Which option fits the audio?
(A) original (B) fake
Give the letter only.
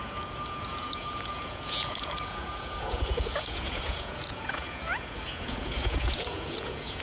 B